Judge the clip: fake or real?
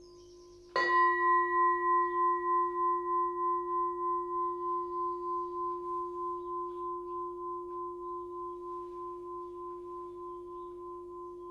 real